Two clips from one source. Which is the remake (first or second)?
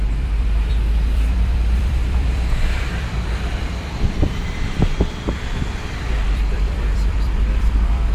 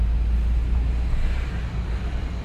first